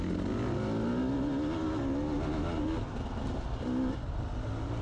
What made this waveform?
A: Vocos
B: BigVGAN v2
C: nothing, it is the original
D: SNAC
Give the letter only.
C